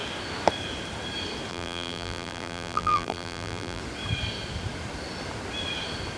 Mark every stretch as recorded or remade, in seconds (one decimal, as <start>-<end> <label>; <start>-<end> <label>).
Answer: 0.0-1.5 recorded; 1.5-3.8 remade; 3.8-6.2 recorded